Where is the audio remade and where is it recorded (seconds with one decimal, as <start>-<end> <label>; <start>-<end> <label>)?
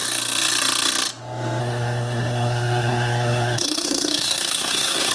0.0-1.6 recorded; 1.6-5.1 remade